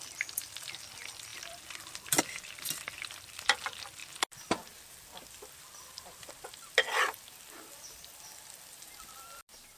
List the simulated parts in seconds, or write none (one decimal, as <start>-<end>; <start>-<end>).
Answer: none